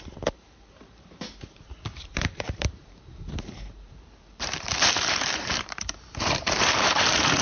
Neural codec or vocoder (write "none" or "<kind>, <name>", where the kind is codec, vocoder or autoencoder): vocoder, BigVGAN v2